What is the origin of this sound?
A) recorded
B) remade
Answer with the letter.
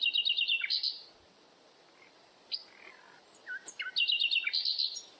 A